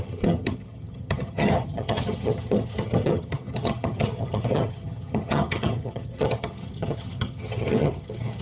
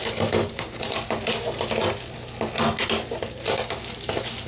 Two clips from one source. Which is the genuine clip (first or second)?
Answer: second